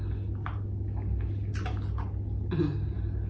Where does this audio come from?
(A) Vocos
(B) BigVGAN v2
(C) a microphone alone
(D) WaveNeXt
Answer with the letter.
C